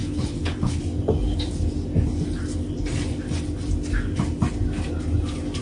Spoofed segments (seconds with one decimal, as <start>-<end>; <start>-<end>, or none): 0.0-0.8